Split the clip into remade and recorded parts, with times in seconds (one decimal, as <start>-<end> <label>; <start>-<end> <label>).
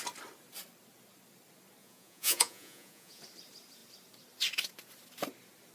0.0-1.8 recorded; 1.8-3.2 remade; 3.2-5.7 recorded